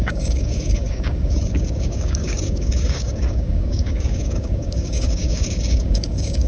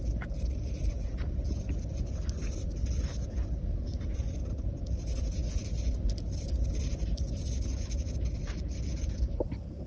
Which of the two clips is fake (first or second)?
first